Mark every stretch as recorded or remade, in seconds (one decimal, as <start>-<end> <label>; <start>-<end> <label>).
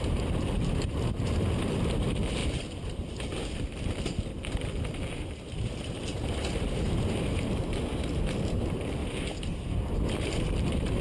0.0-2.4 remade; 2.4-5.2 recorded; 5.2-11.0 remade